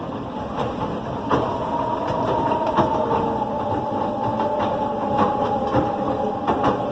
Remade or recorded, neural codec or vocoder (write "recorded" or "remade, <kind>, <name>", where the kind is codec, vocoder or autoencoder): recorded